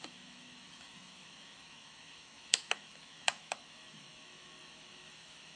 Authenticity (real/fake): fake